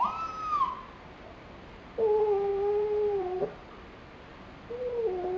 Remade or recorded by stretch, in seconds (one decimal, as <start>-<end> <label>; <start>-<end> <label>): 0.0-2.5 recorded; 2.5-3.4 remade; 3.4-5.4 recorded